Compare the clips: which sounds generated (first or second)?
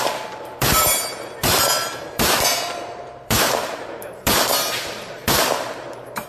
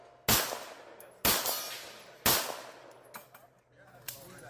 first